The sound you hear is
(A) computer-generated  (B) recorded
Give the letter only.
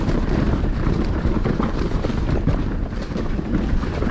A